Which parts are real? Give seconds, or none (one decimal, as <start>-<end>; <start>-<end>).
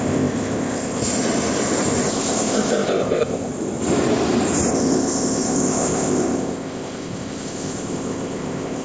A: 1.0-2.1; 3.5-4.7